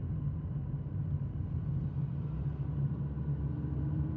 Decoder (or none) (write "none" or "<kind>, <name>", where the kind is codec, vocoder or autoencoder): none